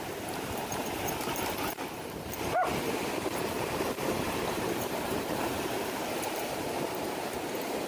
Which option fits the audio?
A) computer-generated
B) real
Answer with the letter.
A